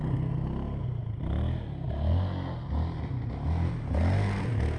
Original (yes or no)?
yes